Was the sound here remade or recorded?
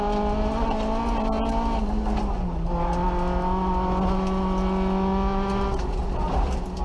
recorded